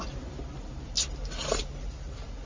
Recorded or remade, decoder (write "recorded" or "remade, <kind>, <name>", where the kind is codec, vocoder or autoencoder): recorded